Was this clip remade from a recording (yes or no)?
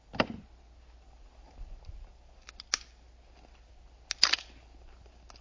no